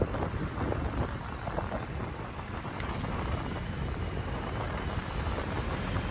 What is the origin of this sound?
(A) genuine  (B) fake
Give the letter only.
A